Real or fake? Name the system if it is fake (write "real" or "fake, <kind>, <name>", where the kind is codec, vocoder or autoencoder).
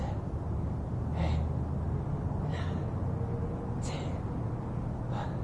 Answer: real